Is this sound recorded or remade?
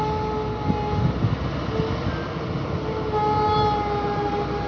recorded